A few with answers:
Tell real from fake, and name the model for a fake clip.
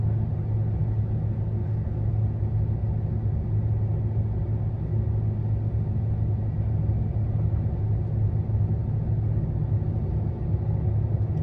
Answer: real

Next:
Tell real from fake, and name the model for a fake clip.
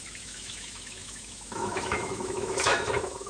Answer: fake, autoencoder, DAC-VAE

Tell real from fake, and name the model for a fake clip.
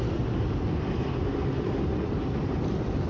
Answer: real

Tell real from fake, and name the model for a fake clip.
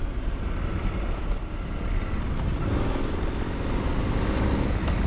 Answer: real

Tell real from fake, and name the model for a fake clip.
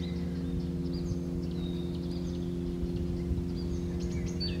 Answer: real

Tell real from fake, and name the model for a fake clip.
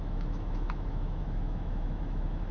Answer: fake, autoencoder, DAC-VAE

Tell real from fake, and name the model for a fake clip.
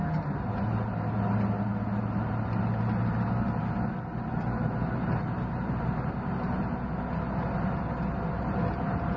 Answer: real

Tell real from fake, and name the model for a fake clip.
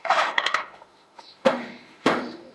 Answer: fake, autoencoder, DAC-VAE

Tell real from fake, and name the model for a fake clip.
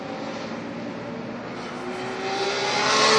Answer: real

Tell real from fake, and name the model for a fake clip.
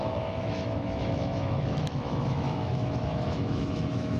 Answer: fake, autoencoder, DAC-VAE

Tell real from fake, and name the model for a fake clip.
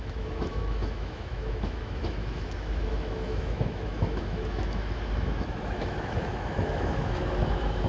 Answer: fake, autoencoder, DAC-VAE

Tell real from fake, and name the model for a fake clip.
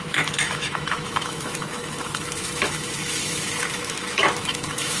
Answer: fake, autoencoder, DAC-VAE